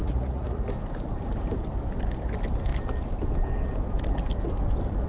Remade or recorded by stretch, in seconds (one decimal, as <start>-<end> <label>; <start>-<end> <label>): 0.0-0.6 remade; 0.6-5.1 recorded